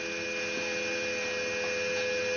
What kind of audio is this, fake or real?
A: real